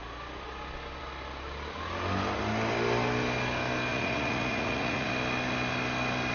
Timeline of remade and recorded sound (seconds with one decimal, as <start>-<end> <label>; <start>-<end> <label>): 0.0-3.9 recorded; 3.9-5.1 remade; 5.1-6.3 recorded